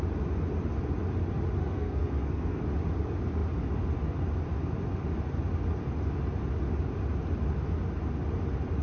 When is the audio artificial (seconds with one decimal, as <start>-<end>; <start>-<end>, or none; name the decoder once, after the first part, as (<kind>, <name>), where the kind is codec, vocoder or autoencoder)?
1.6-2.6 (codec, SNAC)